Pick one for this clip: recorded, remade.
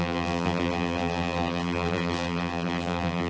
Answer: remade